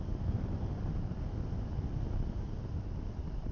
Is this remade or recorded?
recorded